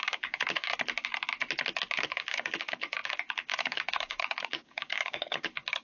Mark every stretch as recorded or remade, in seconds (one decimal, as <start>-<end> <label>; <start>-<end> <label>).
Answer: 0.0-0.7 remade; 0.7-2.0 recorded; 2.0-5.8 remade